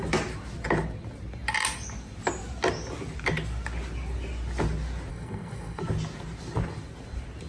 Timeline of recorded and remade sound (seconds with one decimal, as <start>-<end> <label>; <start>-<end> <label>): 0.0-5.1 recorded; 5.1-5.8 remade; 5.8-7.5 recorded